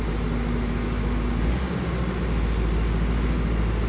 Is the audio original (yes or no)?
yes